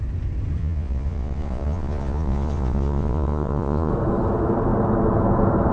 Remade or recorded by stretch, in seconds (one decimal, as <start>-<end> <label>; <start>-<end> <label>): 0.0-0.6 recorded; 0.6-3.9 remade; 3.9-5.7 recorded